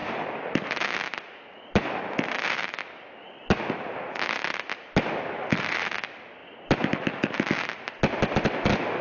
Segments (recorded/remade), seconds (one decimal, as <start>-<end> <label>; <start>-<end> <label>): 0.0-9.0 recorded